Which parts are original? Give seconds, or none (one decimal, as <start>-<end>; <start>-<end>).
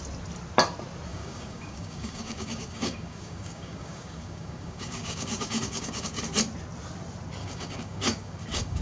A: 0.0-1.1; 6.2-7.4